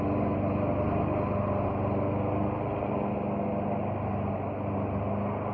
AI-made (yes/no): no